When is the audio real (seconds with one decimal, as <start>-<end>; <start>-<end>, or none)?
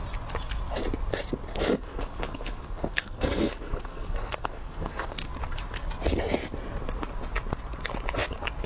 0.0-1.5; 5.3-8.7